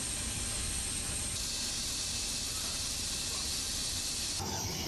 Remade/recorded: recorded